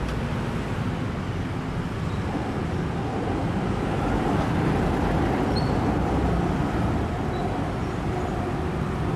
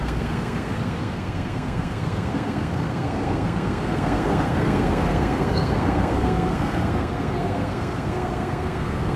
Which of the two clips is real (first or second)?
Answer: first